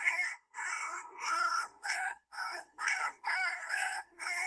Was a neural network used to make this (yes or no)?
yes